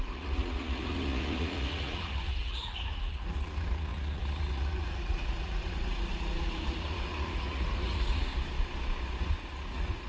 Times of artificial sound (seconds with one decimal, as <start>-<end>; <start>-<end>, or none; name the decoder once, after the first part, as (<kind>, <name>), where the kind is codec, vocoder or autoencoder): 0.0-8.3 (vocoder, Vocos); 9.2-10.1